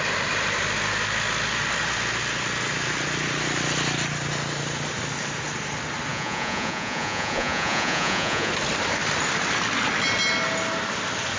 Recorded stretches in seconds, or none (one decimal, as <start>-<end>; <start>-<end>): 0.0-6.1; 8.5-11.4